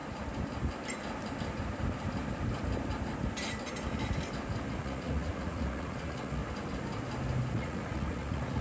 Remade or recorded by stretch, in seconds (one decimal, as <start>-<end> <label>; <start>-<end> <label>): 0.0-4.7 recorded; 4.7-6.4 remade; 6.4-7.5 recorded; 7.5-8.6 remade